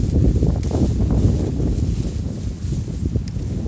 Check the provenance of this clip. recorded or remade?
recorded